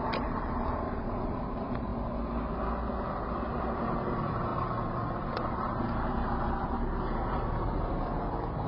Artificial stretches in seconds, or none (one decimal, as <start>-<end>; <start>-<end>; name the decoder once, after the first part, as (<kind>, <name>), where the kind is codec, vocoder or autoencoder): 0.0-1.9 (vocoder, BigVGAN v2); 3.2-8.7